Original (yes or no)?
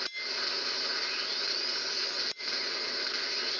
yes